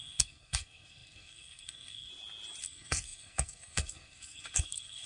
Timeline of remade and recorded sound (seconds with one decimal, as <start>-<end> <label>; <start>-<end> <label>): 0.0-2.1 remade; 2.1-2.6 recorded; 2.6-5.1 remade